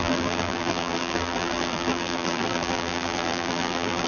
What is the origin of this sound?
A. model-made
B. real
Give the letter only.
A